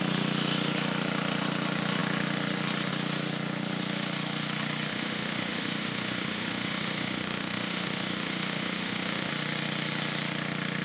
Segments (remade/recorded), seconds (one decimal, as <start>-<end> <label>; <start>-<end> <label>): 0.0-4.9 recorded; 4.9-9.3 remade; 9.3-10.8 recorded